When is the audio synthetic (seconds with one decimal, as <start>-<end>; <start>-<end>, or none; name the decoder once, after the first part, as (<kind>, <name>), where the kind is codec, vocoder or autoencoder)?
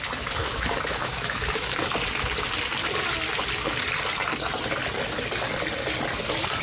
0.4-1.8 (autoencoder, DAC-VAE)